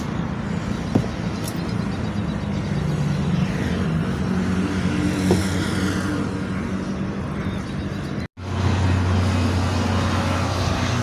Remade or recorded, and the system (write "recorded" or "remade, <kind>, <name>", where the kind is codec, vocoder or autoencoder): recorded